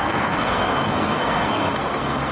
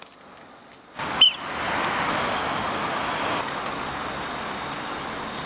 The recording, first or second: second